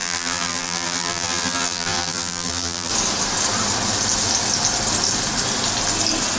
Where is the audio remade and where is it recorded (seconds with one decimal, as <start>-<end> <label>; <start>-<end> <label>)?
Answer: 0.0-2.9 remade; 2.9-6.4 recorded